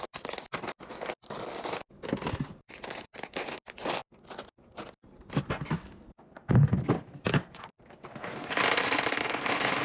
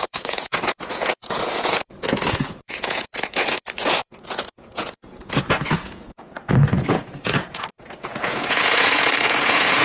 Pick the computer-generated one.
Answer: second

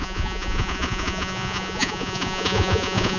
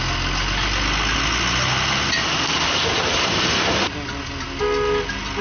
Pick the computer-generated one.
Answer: first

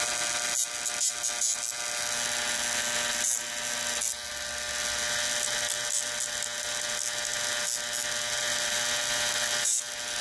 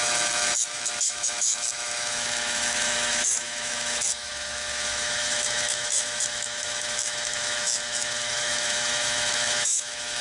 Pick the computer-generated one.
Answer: second